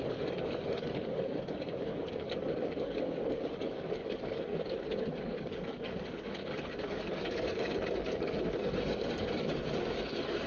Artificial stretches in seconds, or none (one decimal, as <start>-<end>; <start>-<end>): 0.0-4.5; 5.0-10.5